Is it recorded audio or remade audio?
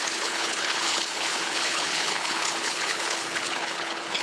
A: remade